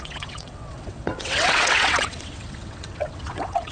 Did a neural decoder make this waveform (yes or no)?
yes